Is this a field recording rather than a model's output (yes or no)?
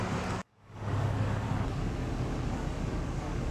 no